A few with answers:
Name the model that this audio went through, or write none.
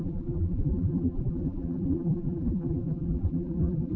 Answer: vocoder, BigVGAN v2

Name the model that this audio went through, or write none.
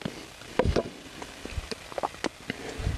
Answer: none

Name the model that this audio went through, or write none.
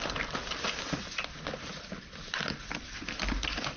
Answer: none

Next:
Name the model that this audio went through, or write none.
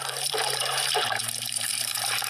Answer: vocoder, BigVGAN v2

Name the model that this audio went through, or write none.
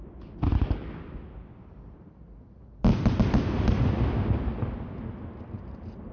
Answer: none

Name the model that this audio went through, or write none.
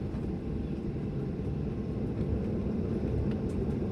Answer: vocoder, BigVGAN v2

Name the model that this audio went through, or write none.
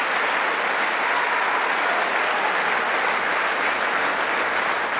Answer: none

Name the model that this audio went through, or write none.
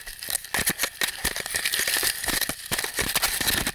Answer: none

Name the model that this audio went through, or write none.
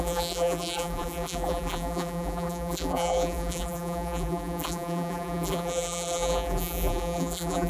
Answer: vocoder, BigVGAN v2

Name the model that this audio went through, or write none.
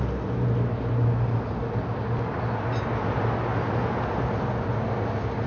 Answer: none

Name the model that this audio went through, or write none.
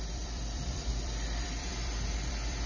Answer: vocoder, BigVGAN v2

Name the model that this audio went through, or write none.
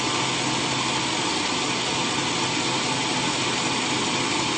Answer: none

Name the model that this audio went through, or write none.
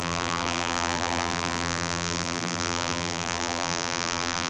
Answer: vocoder, BigVGAN v2